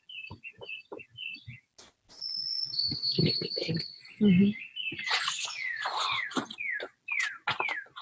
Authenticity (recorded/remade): recorded